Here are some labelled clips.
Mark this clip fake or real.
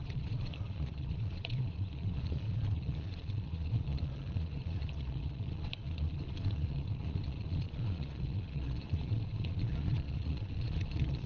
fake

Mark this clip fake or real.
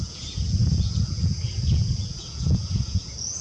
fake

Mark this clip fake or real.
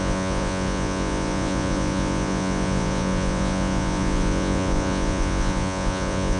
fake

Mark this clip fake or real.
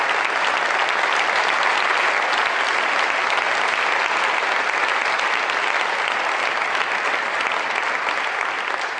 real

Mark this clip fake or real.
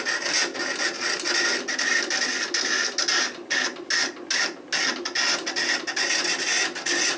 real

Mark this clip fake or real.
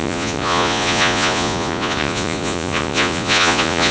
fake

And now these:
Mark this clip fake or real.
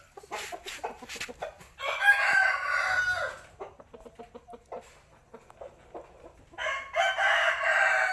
real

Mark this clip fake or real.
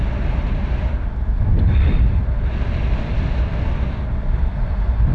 real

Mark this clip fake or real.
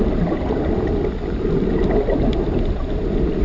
real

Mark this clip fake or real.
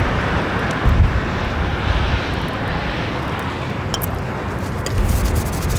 real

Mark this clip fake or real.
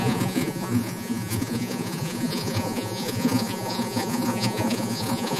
fake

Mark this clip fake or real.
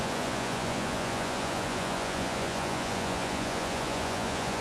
fake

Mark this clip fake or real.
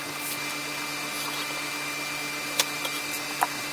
real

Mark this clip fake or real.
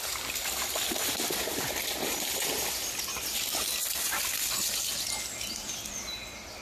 real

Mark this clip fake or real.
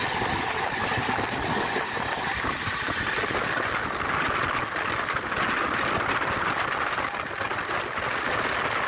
real